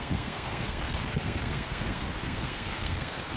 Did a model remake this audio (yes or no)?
yes